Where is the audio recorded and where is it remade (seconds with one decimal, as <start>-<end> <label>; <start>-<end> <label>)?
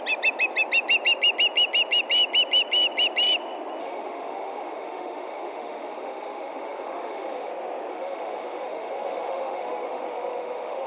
0.0-3.8 recorded; 3.8-7.5 remade; 7.5-7.9 recorded; 7.9-10.9 remade